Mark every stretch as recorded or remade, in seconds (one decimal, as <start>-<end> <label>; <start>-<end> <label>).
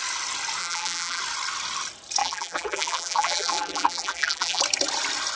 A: 0.0-0.6 recorded; 0.6-1.2 remade; 1.2-2.2 recorded; 2.2-4.6 remade; 4.6-5.4 recorded